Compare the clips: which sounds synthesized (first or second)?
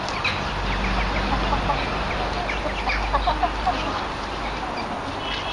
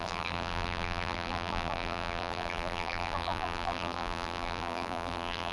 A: second